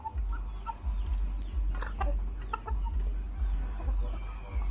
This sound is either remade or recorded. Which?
recorded